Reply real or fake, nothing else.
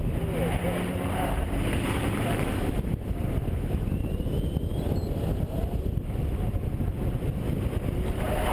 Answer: real